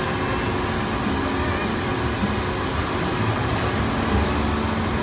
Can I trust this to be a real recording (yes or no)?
yes